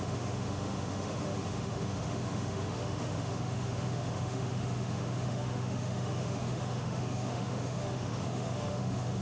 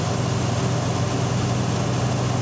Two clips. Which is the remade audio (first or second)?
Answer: first